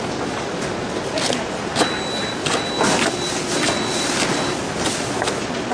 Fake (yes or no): no